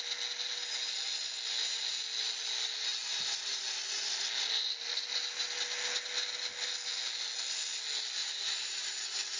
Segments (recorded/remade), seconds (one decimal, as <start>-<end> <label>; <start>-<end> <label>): 0.0-8.2 recorded; 8.2-9.0 remade; 9.0-9.4 recorded